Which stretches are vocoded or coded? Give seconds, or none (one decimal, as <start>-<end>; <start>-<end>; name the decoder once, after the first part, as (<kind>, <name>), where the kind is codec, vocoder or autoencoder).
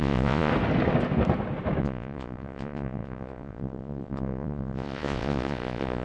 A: 0.0-0.5 (vocoder, Vocos); 1.8-6.0